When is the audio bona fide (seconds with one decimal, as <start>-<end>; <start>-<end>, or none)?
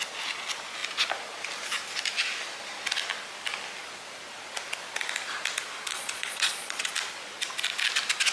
0.0-5.9; 6.9-8.3